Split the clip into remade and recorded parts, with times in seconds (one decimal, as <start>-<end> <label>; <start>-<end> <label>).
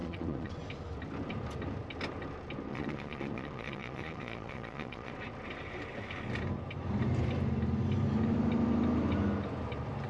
0.0-0.5 remade; 0.5-2.7 recorded; 2.7-5.1 remade; 5.1-10.1 recorded